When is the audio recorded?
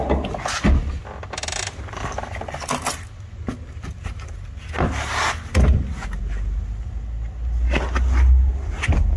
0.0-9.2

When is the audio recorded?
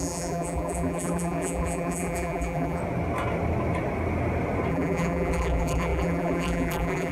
2.8-4.7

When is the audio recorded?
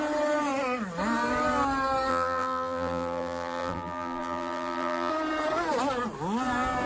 0.0-2.1; 5.1-6.9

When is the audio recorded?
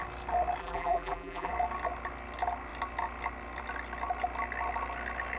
0.0-0.6; 1.5-5.4